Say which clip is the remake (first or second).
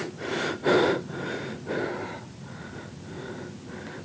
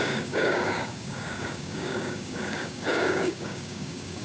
second